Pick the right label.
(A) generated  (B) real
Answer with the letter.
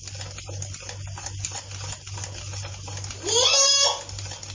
B